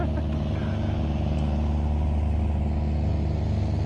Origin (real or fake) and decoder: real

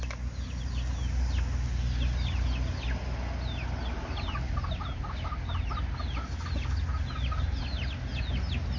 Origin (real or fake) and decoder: real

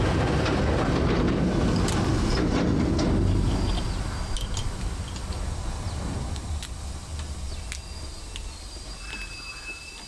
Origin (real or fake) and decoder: real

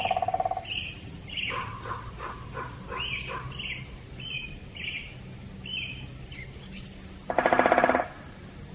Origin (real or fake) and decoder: fake, vocoder, BigVGAN v2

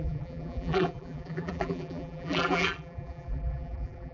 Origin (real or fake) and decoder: fake, vocoder, BigVGAN v2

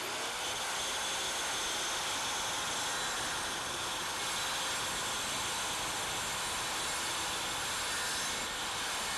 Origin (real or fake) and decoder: real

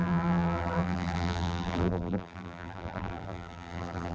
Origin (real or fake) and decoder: fake, vocoder, BigVGAN v2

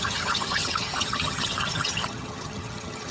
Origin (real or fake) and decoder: fake, vocoder, HiFi-GAN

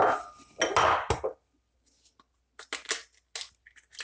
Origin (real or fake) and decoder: real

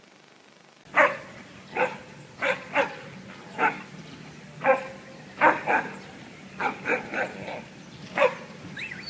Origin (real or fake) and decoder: real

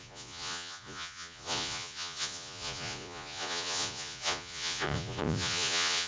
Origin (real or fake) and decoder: fake, vocoder, Vocos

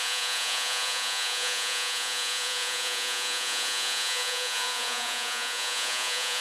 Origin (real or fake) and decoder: fake, vocoder, Vocos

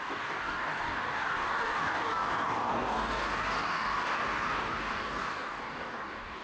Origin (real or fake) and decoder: fake, codec, DAC